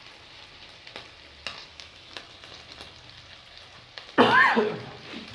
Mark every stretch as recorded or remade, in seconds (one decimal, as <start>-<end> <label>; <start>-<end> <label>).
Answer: 0.0-1.7 recorded; 1.7-2.2 remade; 2.2-5.3 recorded

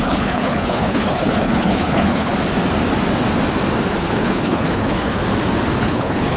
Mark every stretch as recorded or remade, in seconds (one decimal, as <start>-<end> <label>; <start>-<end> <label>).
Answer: 0.0-2.3 remade; 2.3-4.0 recorded; 4.0-5.2 remade; 5.2-5.8 recorded; 5.8-6.4 remade

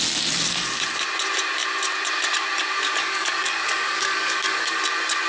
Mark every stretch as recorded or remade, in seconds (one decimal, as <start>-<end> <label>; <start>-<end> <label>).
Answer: 0.0-3.0 recorded; 3.0-4.8 remade; 4.8-5.3 recorded

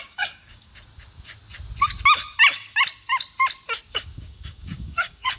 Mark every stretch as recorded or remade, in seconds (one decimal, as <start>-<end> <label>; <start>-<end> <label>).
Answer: 0.0-0.7 remade; 0.7-3.9 recorded; 3.9-5.4 remade